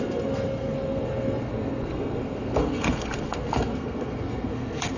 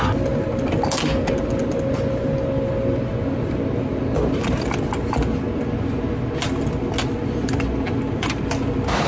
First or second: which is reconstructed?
first